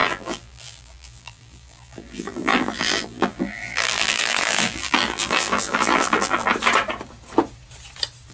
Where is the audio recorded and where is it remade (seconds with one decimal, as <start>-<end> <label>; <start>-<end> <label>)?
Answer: 0.0-6.5 remade; 6.5-8.3 recorded

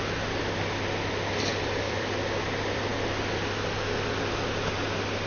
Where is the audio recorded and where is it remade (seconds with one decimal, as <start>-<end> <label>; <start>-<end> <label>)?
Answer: 0.0-1.5 recorded; 1.5-2.1 remade; 2.1-5.3 recorded

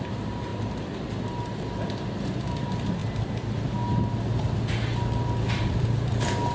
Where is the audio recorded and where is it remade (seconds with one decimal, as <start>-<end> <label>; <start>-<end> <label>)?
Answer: 0.0-0.5 remade; 0.5-2.3 recorded; 2.3-3.0 remade; 3.0-5.5 recorded; 5.5-6.5 remade

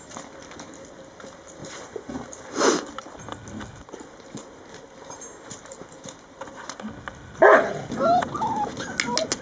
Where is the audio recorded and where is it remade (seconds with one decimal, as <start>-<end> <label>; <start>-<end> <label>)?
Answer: 0.0-1.6 recorded; 1.6-2.6 remade; 2.6-9.4 recorded

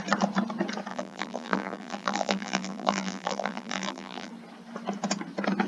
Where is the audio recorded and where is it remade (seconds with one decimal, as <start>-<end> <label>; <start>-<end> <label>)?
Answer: 0.0-0.9 recorded; 0.9-4.3 remade; 4.3-5.7 recorded

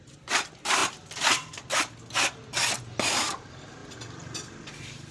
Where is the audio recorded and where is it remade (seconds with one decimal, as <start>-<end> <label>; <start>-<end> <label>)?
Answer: 0.0-0.8 remade; 0.8-2.8 recorded; 2.8-3.8 remade; 3.8-4.4 recorded; 4.4-5.1 remade

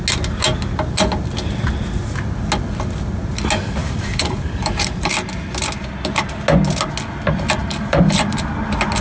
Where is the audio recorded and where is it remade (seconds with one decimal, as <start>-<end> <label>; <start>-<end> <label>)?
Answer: 0.0-3.8 recorded; 3.8-5.1 remade; 5.1-7.6 recorded; 7.6-8.4 remade; 8.4-9.0 recorded